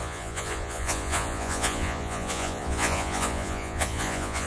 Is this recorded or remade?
remade